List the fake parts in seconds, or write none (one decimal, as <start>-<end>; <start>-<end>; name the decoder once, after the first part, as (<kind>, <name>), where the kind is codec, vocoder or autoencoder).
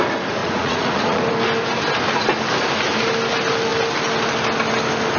0.4-1.2 (vocoder, Vocos)